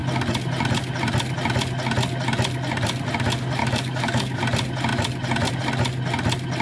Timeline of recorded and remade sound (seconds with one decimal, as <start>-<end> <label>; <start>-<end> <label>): 0.0-3.6 recorded; 3.6-4.4 remade; 4.4-6.6 recorded